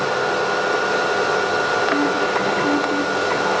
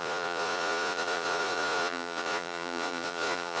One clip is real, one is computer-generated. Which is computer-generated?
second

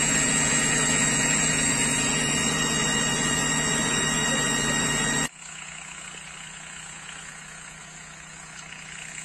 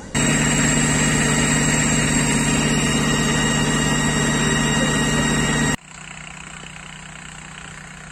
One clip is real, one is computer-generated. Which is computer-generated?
first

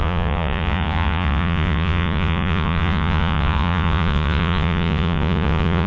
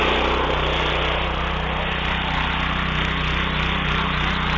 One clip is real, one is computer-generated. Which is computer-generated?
first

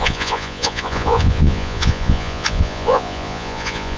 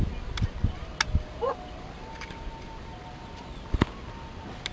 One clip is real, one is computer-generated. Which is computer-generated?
first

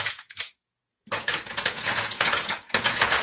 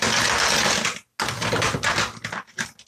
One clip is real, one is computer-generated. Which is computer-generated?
first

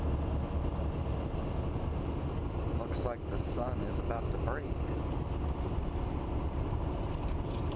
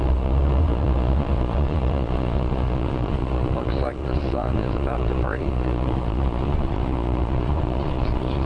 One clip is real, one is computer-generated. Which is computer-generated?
second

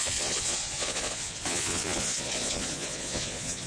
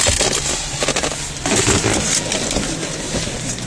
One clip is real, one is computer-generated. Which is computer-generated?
first